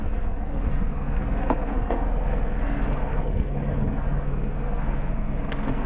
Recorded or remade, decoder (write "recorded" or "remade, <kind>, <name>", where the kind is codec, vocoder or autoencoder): remade, codec, SNAC